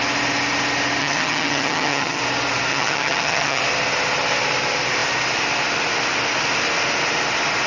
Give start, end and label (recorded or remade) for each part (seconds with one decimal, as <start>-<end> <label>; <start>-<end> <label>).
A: 0.0-1.0 recorded; 1.0-2.2 remade; 2.2-2.7 recorded; 2.7-3.6 remade; 3.6-7.7 recorded